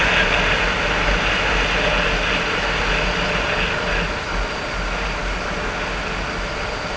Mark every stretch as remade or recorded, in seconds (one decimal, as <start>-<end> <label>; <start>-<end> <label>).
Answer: 0.0-7.0 recorded